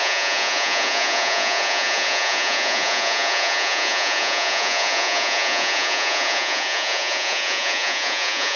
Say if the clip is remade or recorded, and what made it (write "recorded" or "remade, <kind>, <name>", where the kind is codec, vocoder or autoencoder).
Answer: remade, vocoder, Vocos